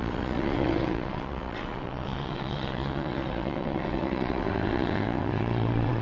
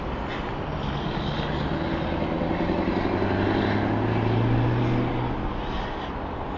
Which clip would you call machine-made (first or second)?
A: first